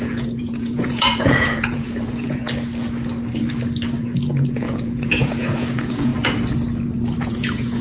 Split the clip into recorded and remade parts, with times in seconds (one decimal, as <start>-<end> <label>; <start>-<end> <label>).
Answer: 0.0-2.4 remade; 2.4-4.0 recorded; 4.0-6.1 remade; 6.1-7.2 recorded; 7.2-7.8 remade